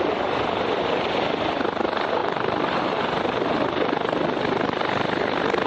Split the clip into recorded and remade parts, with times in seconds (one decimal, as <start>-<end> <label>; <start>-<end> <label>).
0.0-5.7 recorded